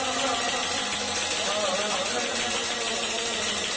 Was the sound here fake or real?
real